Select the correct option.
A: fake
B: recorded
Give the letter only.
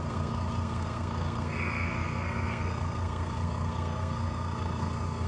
A